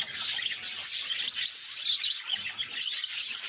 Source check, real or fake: real